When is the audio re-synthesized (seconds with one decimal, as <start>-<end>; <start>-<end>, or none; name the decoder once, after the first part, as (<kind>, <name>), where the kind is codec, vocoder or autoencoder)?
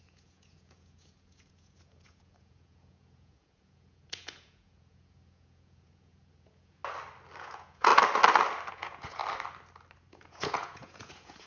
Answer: 0.0-6.8 (vocoder, Vocos); 7.4-7.9; 8.7-9.2; 10.1-11.5